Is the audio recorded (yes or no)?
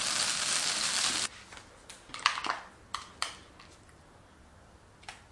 yes